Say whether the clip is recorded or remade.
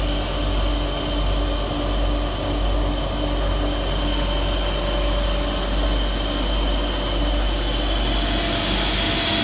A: recorded